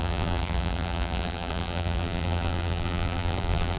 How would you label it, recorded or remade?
remade